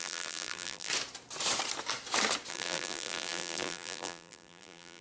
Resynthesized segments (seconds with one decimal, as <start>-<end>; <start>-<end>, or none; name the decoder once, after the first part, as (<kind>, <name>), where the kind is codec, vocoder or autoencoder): 0.0-0.9 (vocoder, BigVGAN v2); 2.5-5.0